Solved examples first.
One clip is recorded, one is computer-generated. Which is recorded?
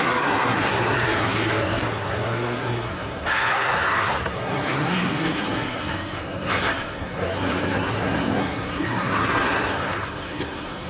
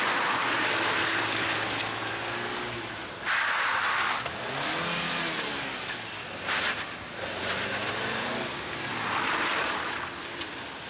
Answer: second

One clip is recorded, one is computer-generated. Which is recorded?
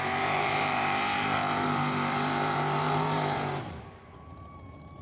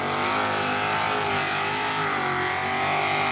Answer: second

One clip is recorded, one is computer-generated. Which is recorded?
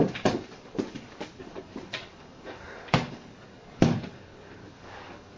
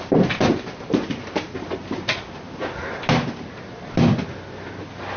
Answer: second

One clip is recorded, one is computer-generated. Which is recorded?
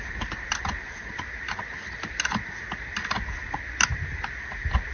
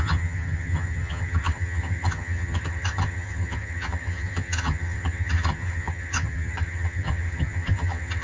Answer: first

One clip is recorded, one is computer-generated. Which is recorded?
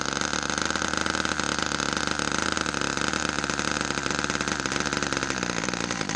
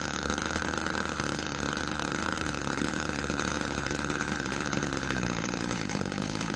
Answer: first